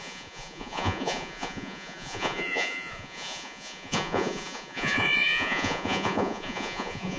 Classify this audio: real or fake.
fake